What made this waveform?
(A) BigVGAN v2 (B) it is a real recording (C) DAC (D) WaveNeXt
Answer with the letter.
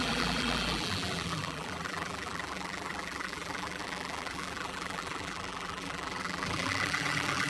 A